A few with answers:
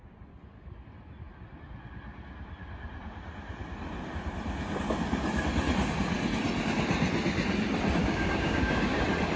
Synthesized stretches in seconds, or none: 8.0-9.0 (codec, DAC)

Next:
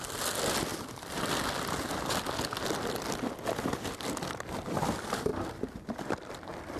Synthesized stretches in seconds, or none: none

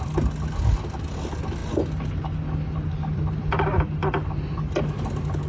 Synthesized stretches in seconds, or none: none

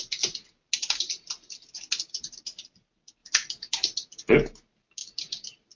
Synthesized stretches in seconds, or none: none